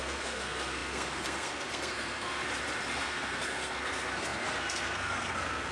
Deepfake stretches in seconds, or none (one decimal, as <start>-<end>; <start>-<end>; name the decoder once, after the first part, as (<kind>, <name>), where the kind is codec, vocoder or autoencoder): 0.0-2.4 (codec, SNAC); 3.0-5.7